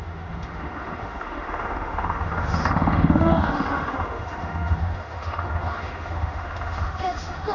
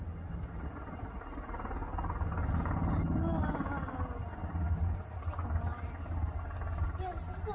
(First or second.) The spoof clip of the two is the first